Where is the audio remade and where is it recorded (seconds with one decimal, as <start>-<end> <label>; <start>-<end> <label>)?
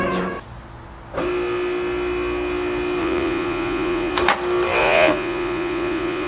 0.0-3.0 recorded; 3.0-4.1 remade; 4.1-4.8 recorded; 4.8-6.3 remade